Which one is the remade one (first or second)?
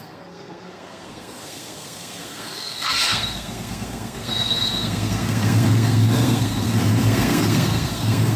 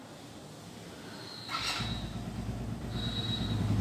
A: first